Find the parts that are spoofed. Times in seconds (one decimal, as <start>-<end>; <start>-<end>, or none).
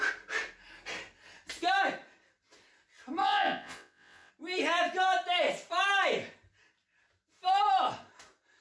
3.2-4.3